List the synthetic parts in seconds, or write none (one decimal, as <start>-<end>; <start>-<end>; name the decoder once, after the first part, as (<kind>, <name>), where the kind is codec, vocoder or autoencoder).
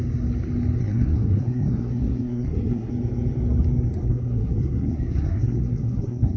0.8-2.9 (codec, SNAC); 4.0-6.4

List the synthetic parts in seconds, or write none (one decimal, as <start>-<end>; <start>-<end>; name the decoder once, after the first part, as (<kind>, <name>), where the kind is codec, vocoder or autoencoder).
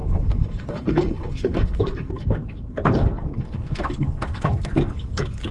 0.0-5.5 (codec, SNAC)